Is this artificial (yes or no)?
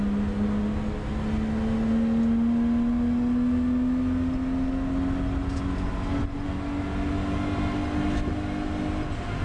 no